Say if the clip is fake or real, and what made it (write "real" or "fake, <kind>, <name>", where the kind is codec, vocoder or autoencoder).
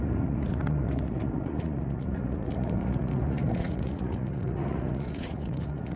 fake, vocoder, Vocos